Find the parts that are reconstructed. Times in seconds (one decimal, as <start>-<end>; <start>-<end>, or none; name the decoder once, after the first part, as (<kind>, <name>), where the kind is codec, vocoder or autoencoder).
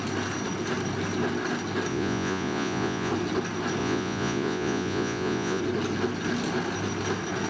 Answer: 1.9-3.1 (vocoder, Vocos); 3.8-5.6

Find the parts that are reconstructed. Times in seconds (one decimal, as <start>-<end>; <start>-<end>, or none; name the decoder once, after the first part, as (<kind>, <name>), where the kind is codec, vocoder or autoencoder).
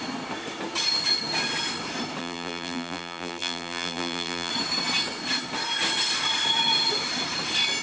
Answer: 2.2-4.5 (vocoder, BigVGAN v2)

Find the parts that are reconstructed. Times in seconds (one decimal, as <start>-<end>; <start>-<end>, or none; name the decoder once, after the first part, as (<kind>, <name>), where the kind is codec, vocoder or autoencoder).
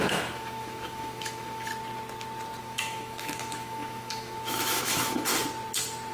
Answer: 0.0-1.7 (autoencoder, DAC-VAE); 2.6-5.3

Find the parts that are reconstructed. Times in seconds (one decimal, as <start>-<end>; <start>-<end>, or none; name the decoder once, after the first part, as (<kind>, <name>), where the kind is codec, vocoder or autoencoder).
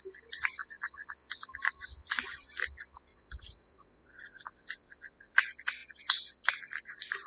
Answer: 3.1-4.1 (vocoder, Vocos)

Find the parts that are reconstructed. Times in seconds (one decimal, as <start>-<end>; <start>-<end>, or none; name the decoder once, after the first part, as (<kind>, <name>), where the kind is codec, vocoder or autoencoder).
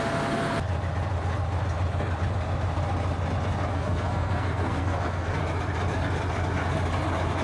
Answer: 3.7-5.4 (codec, SNAC)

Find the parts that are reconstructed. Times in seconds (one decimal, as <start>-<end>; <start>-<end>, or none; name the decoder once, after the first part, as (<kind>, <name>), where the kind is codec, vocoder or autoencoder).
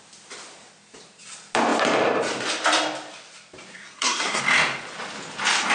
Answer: 3.7-4.4 (codec, SNAC)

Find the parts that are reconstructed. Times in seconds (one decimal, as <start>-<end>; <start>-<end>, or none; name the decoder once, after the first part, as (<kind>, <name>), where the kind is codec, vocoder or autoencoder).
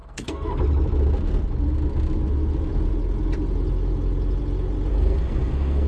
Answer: 0.0-0.6 (codec, SNAC); 4.9-5.9